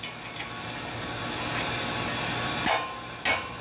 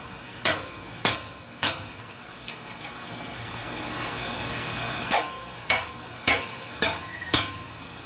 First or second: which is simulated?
second